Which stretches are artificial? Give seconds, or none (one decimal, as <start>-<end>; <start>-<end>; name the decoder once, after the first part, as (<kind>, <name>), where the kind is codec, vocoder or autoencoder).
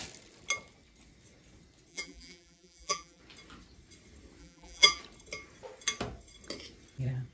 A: 1.9-3.2 (vocoder, BigVGAN v2); 4.4-5.0